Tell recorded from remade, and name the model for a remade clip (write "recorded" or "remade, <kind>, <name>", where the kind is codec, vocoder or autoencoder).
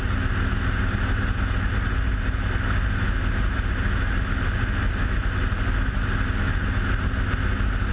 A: recorded